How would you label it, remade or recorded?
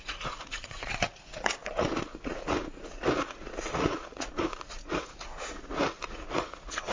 remade